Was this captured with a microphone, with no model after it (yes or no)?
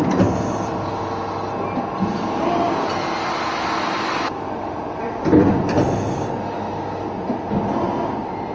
yes